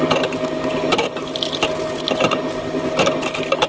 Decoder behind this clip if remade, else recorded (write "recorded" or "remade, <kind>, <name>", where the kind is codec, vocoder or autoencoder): recorded